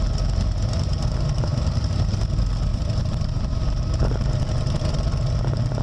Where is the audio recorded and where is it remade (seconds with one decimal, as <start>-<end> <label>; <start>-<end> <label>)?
0.0-1.5 recorded; 1.5-2.2 remade; 2.2-2.7 recorded; 2.7-4.4 remade; 4.4-5.8 recorded